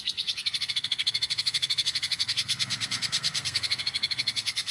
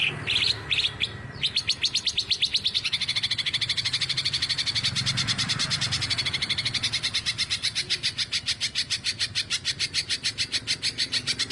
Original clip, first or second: second